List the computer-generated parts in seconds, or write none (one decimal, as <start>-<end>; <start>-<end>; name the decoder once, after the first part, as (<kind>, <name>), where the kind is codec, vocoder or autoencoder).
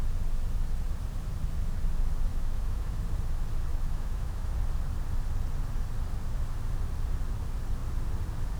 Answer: 2.3-3.0 (autoencoder, DAC-VAE); 3.7-4.5